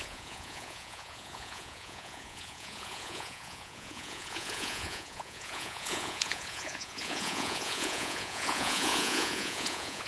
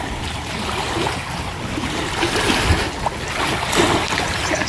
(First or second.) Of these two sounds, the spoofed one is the first